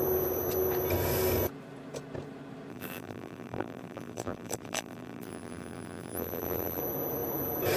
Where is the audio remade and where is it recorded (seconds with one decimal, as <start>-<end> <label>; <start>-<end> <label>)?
0.0-2.7 recorded; 2.7-6.8 remade; 6.8-7.8 recorded